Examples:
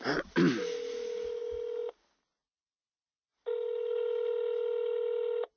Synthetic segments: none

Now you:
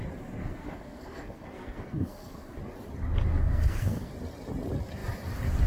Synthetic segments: 0.4-2.6 (codec, SNAC); 3.3-4.1

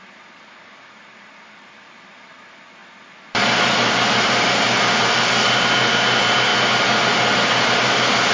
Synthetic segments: 0.0-6.5 (vocoder, BigVGAN v2); 7.7-8.3

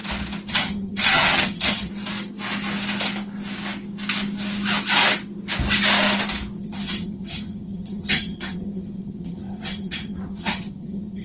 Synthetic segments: 0.5-1.9 (vocoder, HiFi-GAN); 6.6-11.2

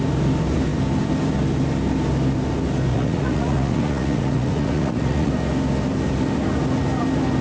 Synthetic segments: 2.9-5.3 (vocoder, Vocos)

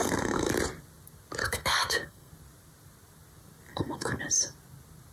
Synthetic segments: 0.0-0.5 (codec, SNAC); 1.4-2.3; 3.7-4.2

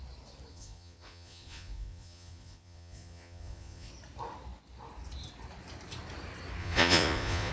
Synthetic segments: 0.5-3.9 (vocoder, Vocos); 6.6-7.5